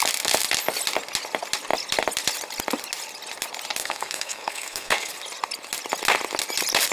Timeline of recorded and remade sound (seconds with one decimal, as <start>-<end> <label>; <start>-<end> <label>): 0.0-3.8 recorded; 3.8-5.1 remade; 5.1-6.9 recorded